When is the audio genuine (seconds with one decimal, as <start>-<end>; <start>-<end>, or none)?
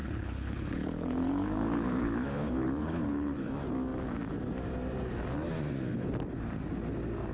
3.5-7.3